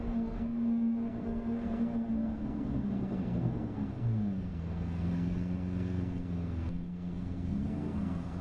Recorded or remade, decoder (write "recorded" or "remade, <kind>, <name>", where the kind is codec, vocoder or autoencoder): remade, codec, SNAC